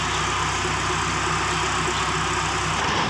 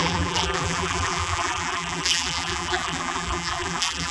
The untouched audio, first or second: first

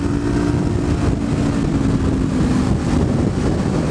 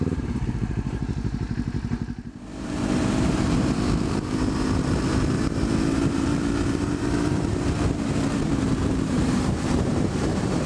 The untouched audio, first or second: first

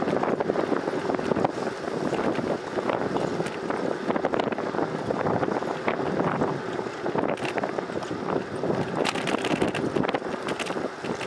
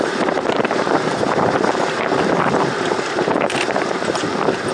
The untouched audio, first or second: first